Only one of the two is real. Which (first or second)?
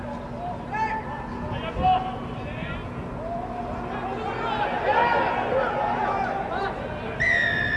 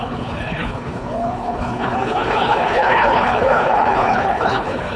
first